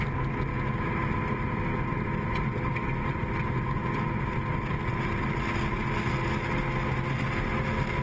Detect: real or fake real